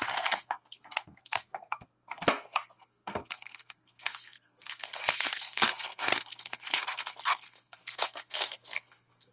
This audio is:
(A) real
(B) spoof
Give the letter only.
B